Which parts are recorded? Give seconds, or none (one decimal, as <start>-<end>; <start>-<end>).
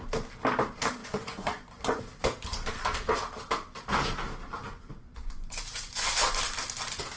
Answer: 0.0-1.0; 2.0-4.6; 6.1-7.2